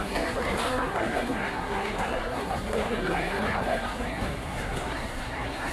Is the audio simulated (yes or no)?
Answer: yes